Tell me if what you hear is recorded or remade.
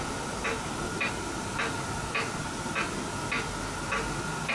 recorded